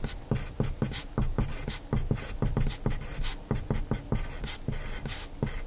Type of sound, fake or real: real